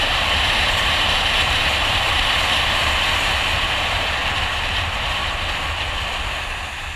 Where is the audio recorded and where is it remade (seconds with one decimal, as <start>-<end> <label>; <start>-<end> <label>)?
0.0-4.2 remade; 4.2-4.7 recorded; 4.7-5.2 remade; 5.2-7.0 recorded